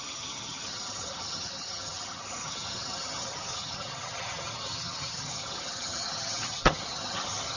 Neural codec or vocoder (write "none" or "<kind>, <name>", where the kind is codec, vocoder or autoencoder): vocoder, HiFi-GAN